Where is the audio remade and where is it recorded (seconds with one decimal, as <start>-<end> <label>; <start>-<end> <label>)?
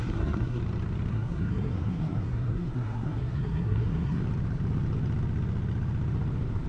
0.0-0.6 remade; 0.6-1.1 recorded; 1.1-4.2 remade; 4.2-6.7 recorded